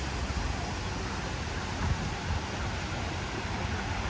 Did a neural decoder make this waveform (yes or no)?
no